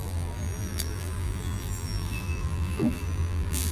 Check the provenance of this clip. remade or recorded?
remade